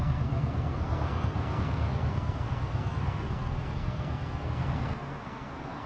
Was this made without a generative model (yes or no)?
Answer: no